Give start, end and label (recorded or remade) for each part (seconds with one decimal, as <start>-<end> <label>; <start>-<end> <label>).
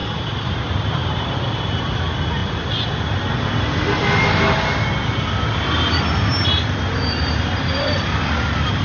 0.0-1.3 remade; 1.3-8.8 recorded